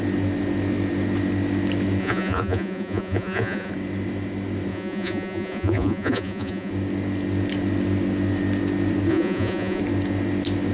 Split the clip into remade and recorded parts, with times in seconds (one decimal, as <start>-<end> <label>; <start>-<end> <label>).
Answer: 0.0-2.0 recorded; 2.0-3.7 remade; 3.7-4.7 recorded; 4.7-6.7 remade; 6.7-9.1 recorded; 9.1-9.8 remade; 9.8-10.7 recorded